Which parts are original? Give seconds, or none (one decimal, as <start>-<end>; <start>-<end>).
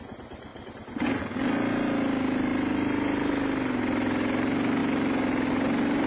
0.0-6.1